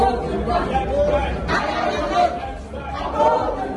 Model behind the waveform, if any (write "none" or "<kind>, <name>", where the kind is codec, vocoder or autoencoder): none